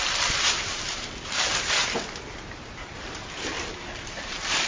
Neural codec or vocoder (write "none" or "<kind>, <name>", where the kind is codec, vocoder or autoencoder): vocoder, BigVGAN v2